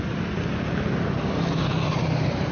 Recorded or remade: recorded